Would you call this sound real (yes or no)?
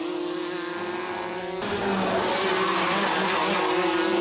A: yes